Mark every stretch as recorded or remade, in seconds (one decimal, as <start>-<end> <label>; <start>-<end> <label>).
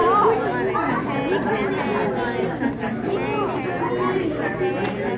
0.0-5.2 recorded